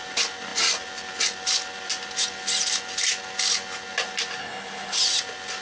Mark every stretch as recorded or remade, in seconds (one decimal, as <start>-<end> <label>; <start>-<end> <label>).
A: 0.0-4.4 recorded; 4.4-5.0 remade; 5.0-5.6 recorded